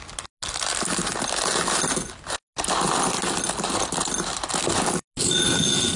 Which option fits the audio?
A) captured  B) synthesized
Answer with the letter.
A